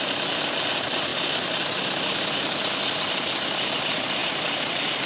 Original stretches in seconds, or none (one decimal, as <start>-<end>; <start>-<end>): none